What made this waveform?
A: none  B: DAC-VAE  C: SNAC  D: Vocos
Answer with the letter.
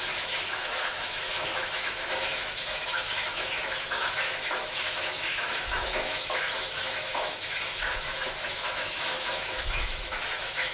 B